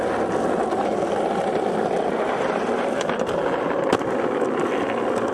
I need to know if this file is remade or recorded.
recorded